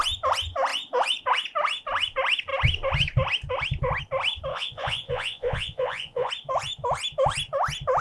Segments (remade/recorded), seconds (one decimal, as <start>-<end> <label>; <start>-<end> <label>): 0.0-4.5 recorded; 4.5-6.3 remade; 6.3-8.0 recorded